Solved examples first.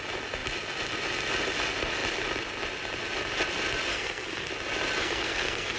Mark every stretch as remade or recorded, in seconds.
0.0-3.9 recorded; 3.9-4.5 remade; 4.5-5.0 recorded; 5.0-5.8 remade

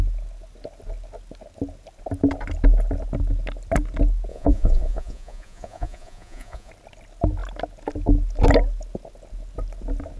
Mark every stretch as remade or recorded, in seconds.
0.0-4.3 recorded; 4.3-6.7 remade; 6.7-10.2 recorded

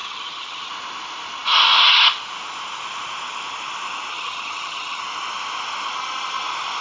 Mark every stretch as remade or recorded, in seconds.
0.0-0.7 remade; 0.7-4.1 recorded; 4.1-5.0 remade; 5.0-6.8 recorded

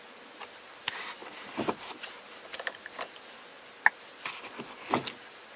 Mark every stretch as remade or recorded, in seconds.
0.0-5.6 recorded